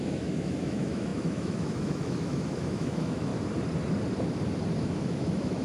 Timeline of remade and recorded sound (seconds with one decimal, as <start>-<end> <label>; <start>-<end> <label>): 0.0-3.3 remade; 3.3-4.8 recorded; 4.8-5.6 remade